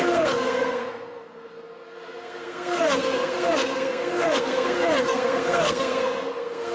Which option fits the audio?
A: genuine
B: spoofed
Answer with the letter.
B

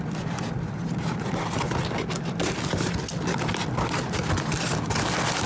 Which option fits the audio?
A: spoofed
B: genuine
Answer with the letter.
B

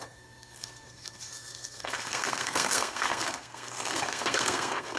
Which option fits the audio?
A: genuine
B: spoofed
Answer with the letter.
B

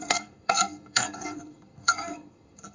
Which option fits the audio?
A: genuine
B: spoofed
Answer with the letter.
B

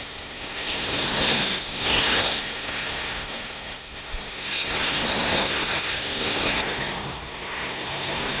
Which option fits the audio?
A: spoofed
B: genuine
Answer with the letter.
A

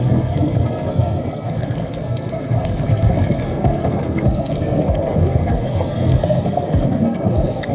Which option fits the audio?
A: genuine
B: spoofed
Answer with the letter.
B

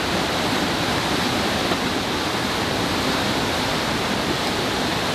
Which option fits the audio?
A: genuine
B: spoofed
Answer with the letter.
A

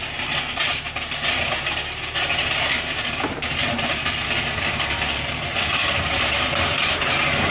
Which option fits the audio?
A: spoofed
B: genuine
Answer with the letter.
B